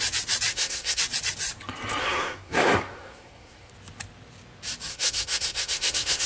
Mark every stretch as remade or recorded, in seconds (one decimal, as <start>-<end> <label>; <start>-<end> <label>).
0.0-0.5 recorded; 0.5-1.0 remade; 1.0-2.0 recorded; 2.0-3.7 remade; 3.7-4.9 recorded; 4.9-6.3 remade